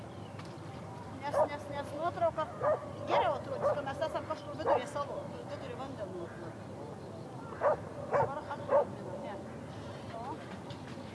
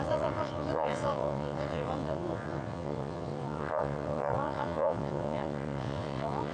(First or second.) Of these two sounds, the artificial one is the second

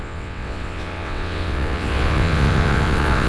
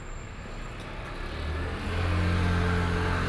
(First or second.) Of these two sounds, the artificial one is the first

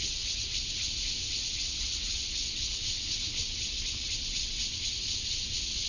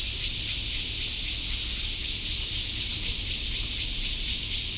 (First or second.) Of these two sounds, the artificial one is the first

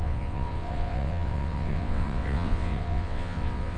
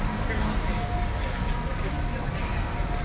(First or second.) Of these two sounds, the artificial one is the first